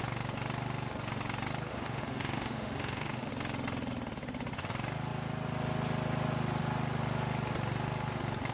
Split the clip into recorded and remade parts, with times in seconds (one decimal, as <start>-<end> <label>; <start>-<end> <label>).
0.0-1.7 recorded; 1.7-3.3 remade; 3.3-8.5 recorded